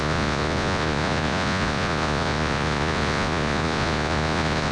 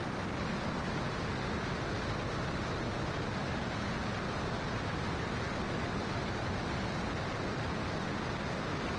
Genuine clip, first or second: second